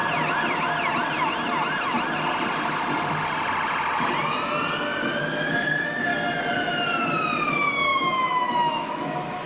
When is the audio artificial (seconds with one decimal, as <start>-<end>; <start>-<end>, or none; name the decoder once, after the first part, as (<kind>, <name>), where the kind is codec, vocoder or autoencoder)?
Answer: 5.2-6.1 (autoencoder, DAC-VAE); 7.5-9.5